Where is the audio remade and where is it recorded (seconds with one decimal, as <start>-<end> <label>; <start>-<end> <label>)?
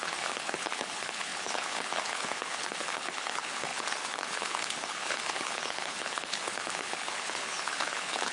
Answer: 0.0-8.3 remade